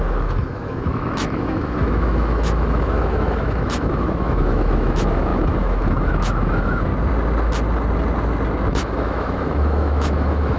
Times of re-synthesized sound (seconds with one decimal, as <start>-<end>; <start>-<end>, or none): 0.0-6.9; 8.7-10.6